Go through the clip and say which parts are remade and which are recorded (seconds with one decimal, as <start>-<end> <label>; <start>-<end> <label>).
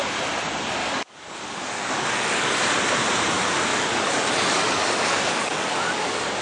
0.0-0.8 recorded; 0.8-2.6 remade; 2.6-3.7 recorded; 3.7-6.4 remade